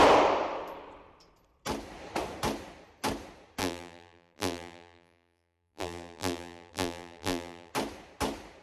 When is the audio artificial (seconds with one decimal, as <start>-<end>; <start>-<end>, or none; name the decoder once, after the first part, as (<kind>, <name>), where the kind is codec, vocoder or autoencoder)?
3.6-7.7 (vocoder, BigVGAN v2)